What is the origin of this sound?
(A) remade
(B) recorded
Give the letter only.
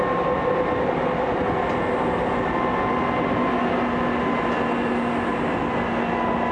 B